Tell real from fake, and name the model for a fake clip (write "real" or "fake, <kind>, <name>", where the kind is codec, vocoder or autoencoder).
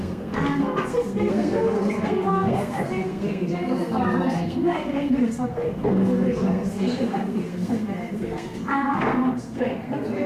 fake, codec, SNAC